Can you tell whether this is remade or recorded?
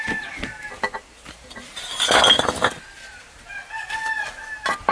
recorded